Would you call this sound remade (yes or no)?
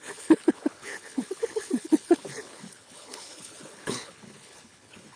yes